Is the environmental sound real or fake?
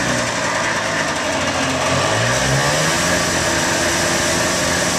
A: real